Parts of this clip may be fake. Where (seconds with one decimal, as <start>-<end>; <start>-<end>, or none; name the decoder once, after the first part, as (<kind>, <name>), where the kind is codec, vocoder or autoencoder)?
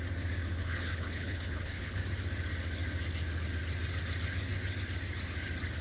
0.6-2.0 (codec, HILCodec)